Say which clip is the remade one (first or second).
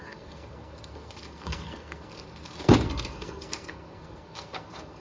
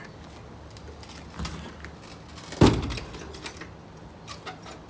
first